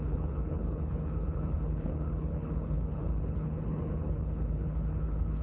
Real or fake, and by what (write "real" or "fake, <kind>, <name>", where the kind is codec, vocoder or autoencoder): fake, codec, HILCodec